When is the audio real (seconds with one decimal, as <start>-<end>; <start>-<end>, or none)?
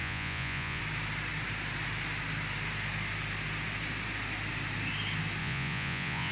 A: 0.8-5.4